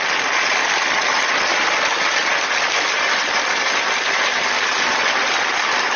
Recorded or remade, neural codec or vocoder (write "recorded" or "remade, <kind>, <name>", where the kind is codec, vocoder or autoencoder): recorded